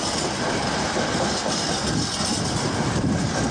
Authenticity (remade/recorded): recorded